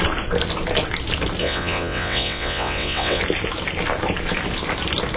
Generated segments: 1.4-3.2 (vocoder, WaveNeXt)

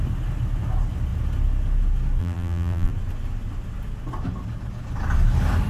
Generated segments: 2.2-2.9 (vocoder, BigVGAN v2)

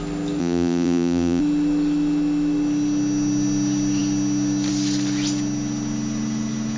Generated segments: 0.4-1.4 (vocoder, BigVGAN v2)

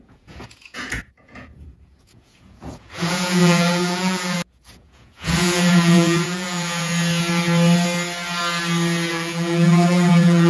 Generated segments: 0.0-6.9 (vocoder, Vocos); 9.1-10.5

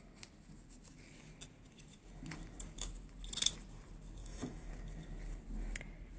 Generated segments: 4.2-4.7 (autoencoder, DAC-VAE)